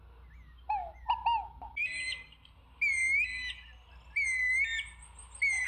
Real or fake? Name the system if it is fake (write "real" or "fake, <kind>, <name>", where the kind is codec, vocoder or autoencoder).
real